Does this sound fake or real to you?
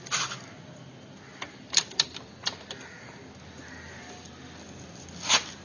real